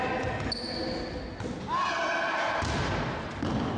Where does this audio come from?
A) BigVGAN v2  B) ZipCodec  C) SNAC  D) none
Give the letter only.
D